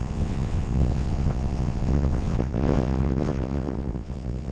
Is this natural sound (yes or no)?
no